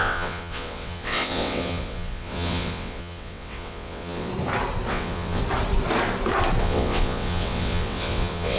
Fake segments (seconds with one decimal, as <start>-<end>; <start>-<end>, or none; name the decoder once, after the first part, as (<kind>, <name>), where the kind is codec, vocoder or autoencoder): 0.0-4.3 (vocoder, WaveNeXt); 4.9-5.4; 6.6-8.6